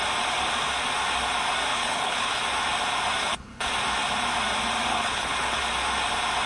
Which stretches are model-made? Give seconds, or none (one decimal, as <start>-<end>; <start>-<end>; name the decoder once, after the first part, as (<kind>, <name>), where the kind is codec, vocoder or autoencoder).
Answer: 1.7-2.4 (codec, HILCodec); 3.2-3.7; 4.9-5.6